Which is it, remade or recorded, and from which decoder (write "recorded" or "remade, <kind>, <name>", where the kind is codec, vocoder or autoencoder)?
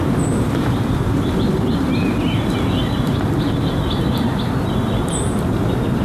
remade, vocoder, BigVGAN v2